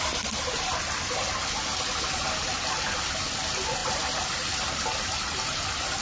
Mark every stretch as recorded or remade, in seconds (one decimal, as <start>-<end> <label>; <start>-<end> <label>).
0.0-6.0 recorded